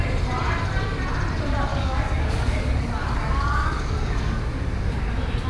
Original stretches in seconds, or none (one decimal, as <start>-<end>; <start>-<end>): 0.0-1.7; 5.0-5.5